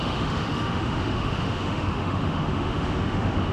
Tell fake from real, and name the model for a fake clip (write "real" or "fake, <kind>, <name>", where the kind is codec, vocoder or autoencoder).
fake, autoencoder, DAC-VAE